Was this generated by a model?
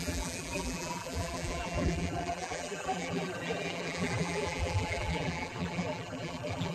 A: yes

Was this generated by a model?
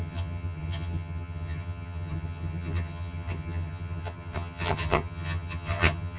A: yes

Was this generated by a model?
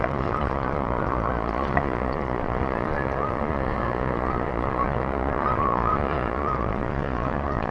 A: yes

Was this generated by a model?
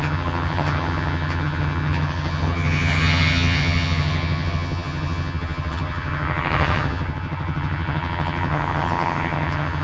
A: yes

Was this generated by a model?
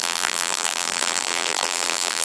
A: yes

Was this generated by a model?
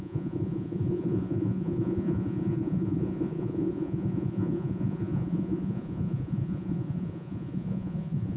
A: yes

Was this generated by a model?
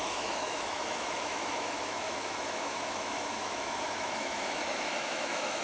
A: yes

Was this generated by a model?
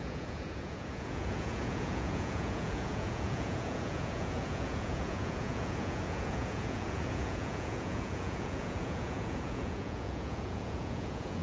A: yes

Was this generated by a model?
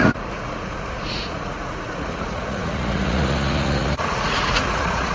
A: yes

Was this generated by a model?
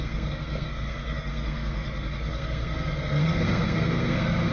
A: yes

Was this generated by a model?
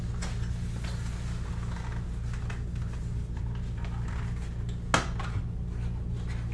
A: no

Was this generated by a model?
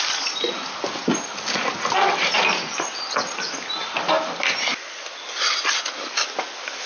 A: no